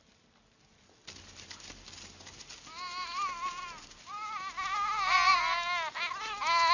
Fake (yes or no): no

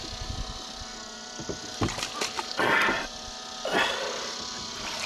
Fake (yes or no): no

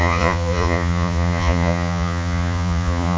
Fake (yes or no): yes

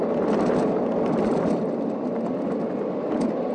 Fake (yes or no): no